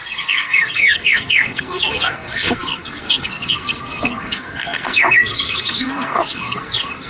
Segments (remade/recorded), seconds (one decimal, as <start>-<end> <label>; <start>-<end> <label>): 0.0-7.1 remade